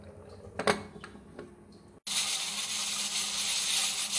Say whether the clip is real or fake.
real